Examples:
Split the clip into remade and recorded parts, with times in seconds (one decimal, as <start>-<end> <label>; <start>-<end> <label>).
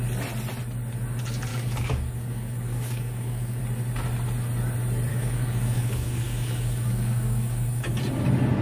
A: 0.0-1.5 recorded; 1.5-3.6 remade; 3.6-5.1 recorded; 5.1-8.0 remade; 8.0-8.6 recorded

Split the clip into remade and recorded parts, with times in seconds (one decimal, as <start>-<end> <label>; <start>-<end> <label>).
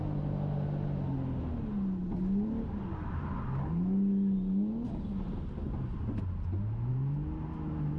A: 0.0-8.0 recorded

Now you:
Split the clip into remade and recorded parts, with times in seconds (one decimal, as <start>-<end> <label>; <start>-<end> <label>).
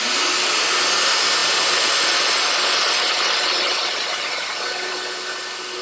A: 0.0-5.8 recorded